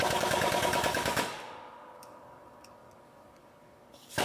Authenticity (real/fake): fake